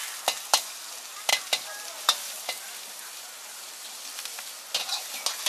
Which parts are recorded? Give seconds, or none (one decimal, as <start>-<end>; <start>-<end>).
0.0-1.3; 4.5-5.5